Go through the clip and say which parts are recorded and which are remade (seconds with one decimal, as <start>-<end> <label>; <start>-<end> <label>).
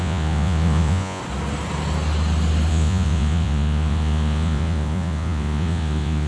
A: 0.0-1.2 remade; 1.2-2.7 recorded; 2.7-6.3 remade